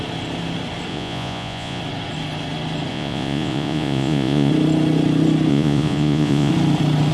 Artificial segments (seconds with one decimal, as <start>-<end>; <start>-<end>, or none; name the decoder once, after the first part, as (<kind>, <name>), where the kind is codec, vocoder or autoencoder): 0.9-1.8 (vocoder, Vocos); 2.9-4.5; 5.5-6.5